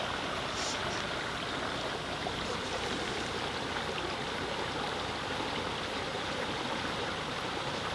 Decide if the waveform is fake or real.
fake